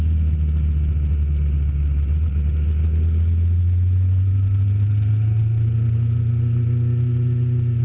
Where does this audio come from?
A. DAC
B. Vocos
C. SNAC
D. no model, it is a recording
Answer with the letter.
D